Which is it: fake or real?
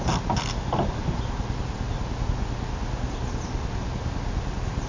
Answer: real